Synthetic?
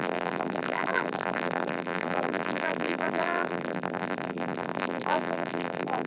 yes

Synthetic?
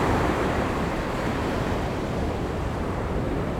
yes